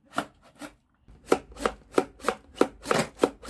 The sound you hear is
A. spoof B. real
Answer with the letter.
B